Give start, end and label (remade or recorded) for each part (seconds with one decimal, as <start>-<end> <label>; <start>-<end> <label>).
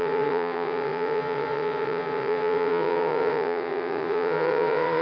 0.0-5.0 remade